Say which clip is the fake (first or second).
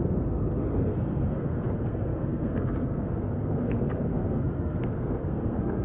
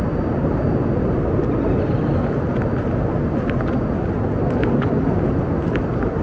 first